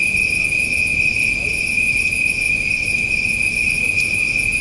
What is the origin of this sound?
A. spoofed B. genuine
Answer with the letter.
B